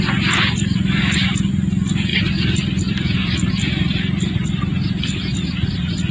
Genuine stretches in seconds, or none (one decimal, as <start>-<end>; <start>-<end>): 0.0-2.1; 3.5-6.1